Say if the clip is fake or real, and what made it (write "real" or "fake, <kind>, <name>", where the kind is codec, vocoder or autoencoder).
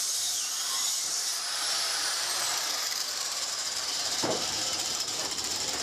fake, vocoder, BigVGAN v2